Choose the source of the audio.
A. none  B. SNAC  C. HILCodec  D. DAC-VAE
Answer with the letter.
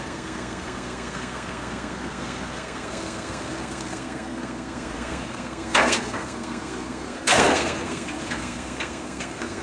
B